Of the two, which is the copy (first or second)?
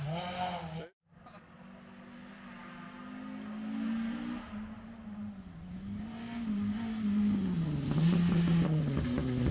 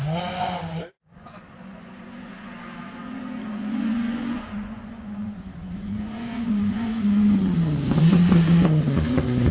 second